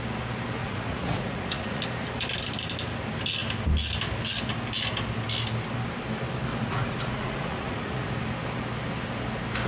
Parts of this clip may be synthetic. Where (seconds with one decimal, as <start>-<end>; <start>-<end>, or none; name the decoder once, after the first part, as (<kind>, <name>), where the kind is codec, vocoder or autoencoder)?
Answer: 0.6-1.8 (vocoder, Vocos); 6.5-8.1